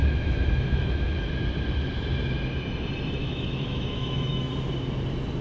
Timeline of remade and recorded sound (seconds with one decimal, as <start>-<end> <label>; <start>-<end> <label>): 0.0-1.3 remade; 1.3-3.2 recorded; 3.2-4.5 remade; 4.5-5.4 recorded